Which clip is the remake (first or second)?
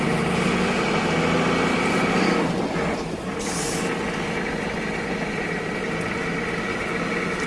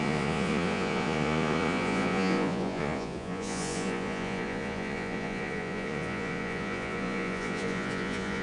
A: second